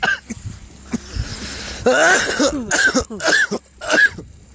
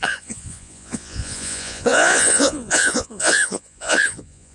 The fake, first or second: second